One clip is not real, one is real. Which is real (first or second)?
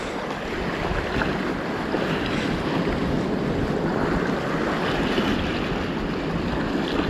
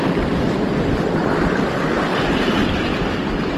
first